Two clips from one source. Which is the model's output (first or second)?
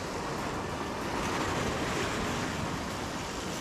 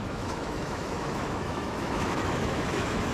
second